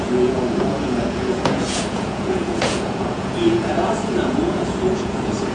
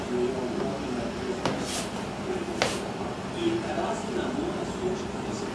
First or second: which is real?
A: second